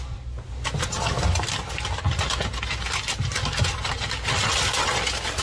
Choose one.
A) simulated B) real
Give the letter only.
B